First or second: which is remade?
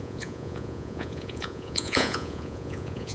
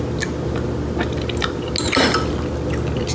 first